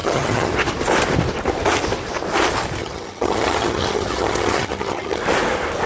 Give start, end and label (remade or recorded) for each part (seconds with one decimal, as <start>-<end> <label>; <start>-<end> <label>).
0.0-0.5 remade; 0.5-2.8 recorded; 2.8-5.2 remade; 5.2-5.9 recorded